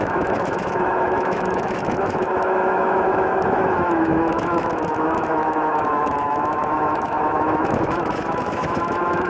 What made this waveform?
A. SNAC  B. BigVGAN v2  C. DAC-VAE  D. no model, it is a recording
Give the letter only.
C